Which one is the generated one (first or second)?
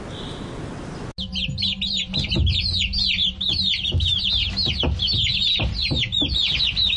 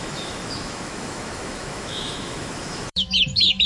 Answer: second